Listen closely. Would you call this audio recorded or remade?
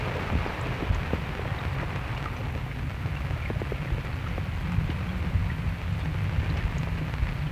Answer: recorded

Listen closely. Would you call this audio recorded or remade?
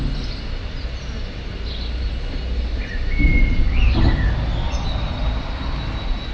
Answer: recorded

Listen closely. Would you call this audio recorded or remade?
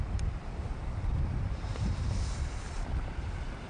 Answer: remade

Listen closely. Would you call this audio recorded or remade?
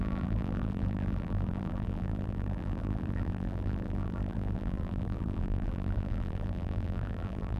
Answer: remade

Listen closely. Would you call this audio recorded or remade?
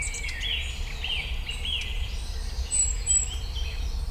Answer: remade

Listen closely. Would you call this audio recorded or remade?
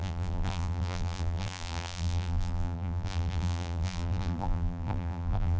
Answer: remade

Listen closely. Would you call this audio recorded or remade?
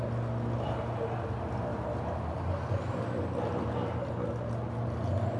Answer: recorded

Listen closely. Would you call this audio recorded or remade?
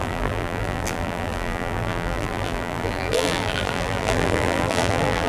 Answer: remade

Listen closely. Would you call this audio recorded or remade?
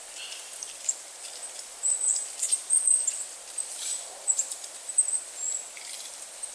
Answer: remade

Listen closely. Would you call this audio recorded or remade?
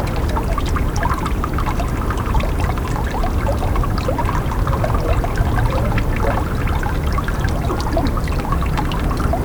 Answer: remade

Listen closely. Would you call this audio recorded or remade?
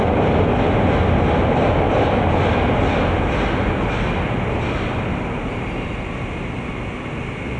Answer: recorded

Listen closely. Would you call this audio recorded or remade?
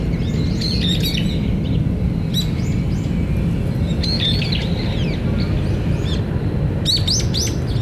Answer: recorded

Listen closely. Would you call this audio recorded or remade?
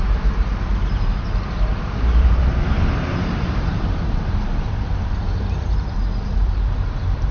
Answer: remade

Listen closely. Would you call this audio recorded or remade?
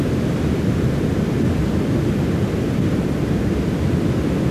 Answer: recorded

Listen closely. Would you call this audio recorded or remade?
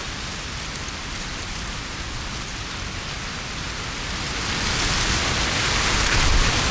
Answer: recorded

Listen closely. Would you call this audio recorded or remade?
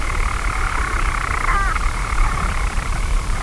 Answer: remade